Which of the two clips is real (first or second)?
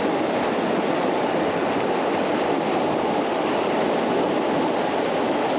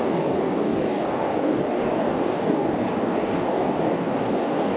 first